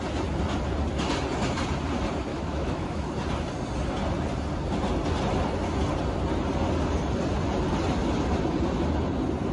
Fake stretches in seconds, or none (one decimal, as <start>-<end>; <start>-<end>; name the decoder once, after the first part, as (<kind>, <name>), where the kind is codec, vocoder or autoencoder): 2.3-3.1 (autoencoder, DAC-VAE)